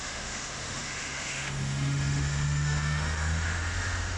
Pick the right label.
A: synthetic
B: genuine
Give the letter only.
A